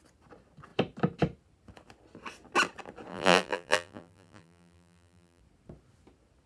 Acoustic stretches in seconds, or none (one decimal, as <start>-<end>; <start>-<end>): 0.0-3.1; 5.4-6.5